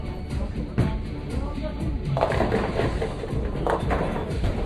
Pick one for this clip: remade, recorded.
recorded